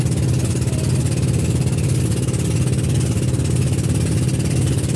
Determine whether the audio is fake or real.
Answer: real